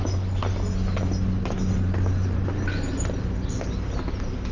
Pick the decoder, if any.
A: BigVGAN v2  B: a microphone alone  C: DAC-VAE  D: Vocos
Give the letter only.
B